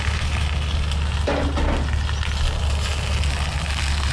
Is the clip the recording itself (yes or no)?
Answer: yes